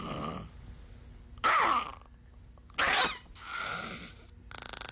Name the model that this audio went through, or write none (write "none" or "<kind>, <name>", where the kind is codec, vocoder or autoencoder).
none